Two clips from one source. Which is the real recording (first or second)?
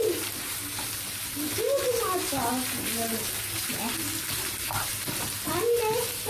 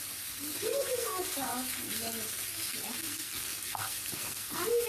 first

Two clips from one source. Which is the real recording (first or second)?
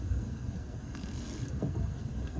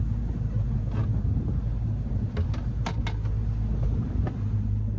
second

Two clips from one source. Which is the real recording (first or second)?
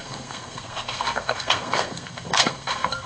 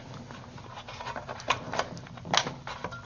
second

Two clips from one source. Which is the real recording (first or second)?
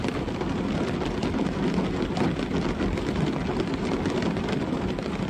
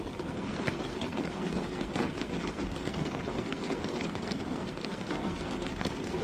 first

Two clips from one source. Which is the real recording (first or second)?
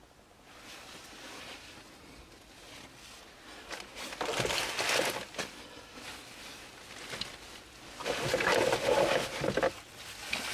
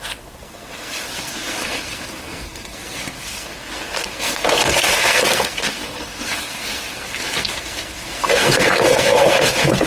first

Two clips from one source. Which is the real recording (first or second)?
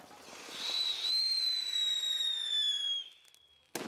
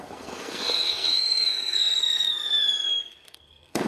first